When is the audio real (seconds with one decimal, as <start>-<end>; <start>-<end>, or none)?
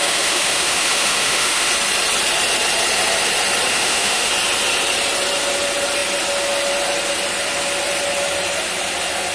1.7-3.7; 4.3-9.3